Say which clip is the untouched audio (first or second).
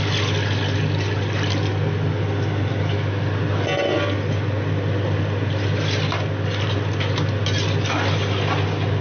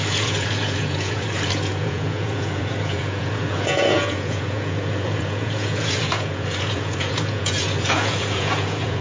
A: first